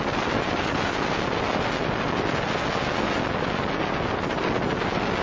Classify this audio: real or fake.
real